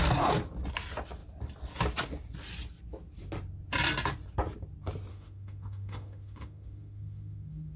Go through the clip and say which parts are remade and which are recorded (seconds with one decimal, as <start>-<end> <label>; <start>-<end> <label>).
0.0-5.1 recorded; 5.1-7.8 remade